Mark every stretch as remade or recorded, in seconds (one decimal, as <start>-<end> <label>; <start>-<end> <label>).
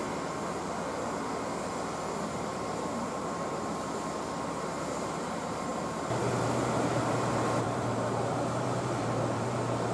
0.0-2.2 recorded; 2.2-9.9 remade